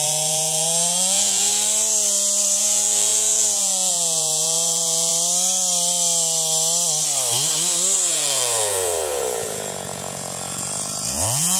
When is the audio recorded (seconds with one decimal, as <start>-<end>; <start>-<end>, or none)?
1.5-2.6; 5.1-8.1